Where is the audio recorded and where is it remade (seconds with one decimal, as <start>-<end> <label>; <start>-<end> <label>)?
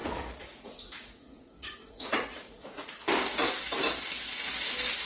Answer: 0.0-3.1 remade; 3.1-5.1 recorded